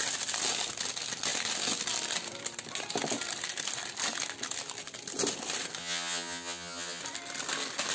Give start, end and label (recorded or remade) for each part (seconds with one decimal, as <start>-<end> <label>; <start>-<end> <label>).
0.0-5.8 recorded; 5.8-7.0 remade; 7.0-7.9 recorded